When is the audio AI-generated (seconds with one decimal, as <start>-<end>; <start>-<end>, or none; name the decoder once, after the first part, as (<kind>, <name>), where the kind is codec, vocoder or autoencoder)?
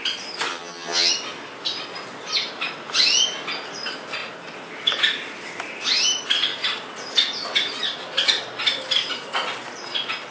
0.5-1.1 (vocoder, HiFi-GAN)